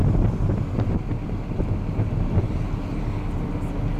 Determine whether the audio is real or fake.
real